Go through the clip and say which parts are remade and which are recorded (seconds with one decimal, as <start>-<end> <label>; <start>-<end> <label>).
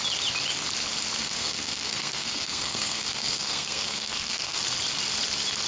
0.0-1.2 recorded; 1.2-4.6 remade; 4.6-5.7 recorded